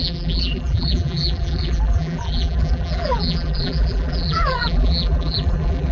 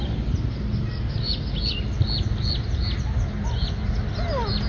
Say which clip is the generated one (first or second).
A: first